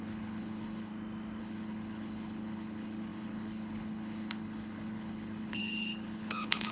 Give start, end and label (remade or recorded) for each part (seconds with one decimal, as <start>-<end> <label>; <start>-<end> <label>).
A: 0.0-0.9 remade; 0.9-1.4 recorded; 1.4-6.7 remade